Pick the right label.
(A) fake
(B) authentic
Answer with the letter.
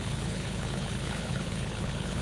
A